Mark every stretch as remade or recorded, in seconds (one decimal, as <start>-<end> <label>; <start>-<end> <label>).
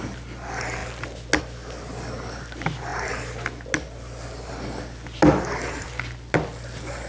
0.0-7.1 recorded